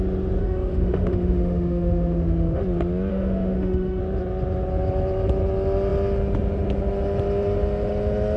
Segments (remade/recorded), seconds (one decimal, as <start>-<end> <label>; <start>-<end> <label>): 0.0-0.4 recorded; 0.4-2.6 remade; 2.6-3.1 recorded; 3.1-4.0 remade; 4.0-8.4 recorded

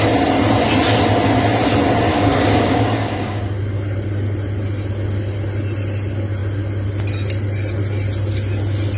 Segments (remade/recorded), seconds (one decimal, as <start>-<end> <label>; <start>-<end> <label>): 0.0-2.1 recorded; 2.1-3.4 remade; 3.4-9.0 recorded

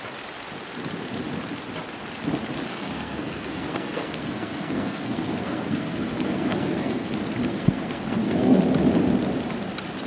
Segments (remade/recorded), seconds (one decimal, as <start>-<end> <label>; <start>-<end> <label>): 0.0-2.7 recorded; 2.7-7.1 remade; 7.1-7.5 recorded; 7.5-8.6 remade; 8.6-10.1 recorded